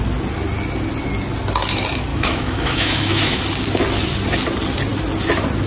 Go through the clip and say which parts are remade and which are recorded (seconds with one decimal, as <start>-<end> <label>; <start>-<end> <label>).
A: 0.0-2.1 recorded; 2.1-3.4 remade; 3.4-5.7 recorded